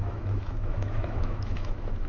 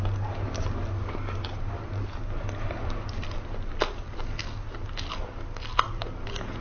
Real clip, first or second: second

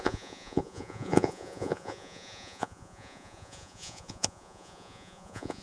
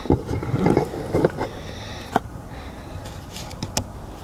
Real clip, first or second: second